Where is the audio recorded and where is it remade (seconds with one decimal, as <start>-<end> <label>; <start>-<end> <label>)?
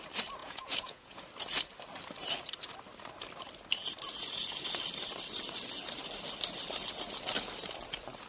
0.0-0.4 recorded; 0.4-1.2 remade; 1.2-8.3 recorded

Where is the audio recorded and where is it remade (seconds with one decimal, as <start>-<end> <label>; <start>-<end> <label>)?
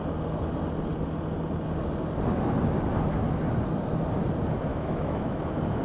0.0-4.7 recorded; 4.7-5.8 remade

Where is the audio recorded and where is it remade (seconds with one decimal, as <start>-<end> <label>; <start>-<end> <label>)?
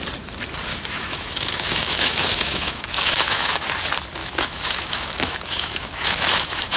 0.0-0.7 recorded; 0.7-3.7 remade; 3.7-4.2 recorded; 4.2-6.8 remade